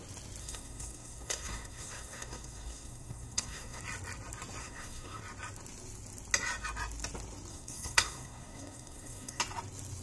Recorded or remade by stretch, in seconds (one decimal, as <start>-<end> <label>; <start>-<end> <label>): 0.0-0.4 recorded; 0.4-3.8 remade; 3.8-4.6 recorded; 4.6-5.2 remade; 5.2-7.5 recorded; 7.5-9.4 remade; 9.4-10.0 recorded